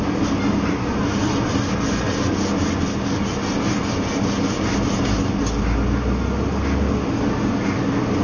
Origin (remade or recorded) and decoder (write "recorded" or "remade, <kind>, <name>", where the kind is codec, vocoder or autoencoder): recorded